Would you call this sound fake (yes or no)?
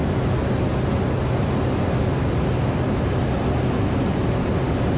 no